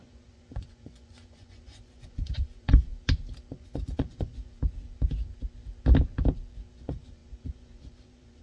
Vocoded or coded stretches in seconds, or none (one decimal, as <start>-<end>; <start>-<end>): 0.0-2.9; 3.5-4.6; 6.7-8.4